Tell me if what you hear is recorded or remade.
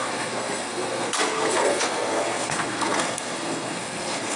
remade